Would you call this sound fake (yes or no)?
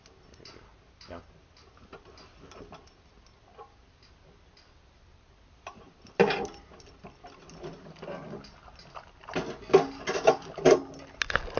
no